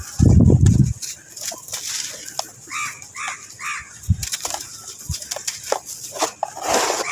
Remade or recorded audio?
recorded